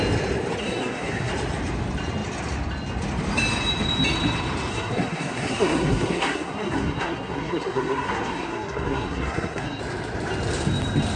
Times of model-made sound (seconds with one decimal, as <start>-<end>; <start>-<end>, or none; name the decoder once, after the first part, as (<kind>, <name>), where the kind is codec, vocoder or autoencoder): 0.6-1.3 (codec, SNAC); 4.7-9.8